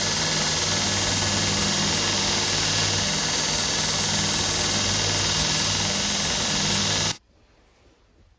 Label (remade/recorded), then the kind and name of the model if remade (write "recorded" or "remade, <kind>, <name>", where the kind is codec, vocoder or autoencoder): recorded